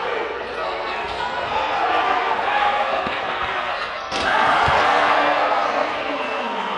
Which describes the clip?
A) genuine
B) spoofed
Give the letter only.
B